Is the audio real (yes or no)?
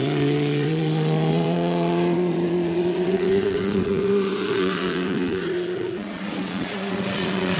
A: no